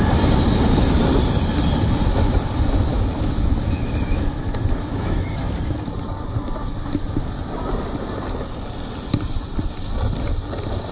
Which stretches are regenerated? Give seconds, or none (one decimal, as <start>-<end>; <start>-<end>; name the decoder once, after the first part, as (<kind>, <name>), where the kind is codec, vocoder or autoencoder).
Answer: 2.9-5.6 (autoencoder, DAC-VAE)